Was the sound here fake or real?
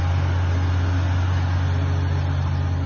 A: real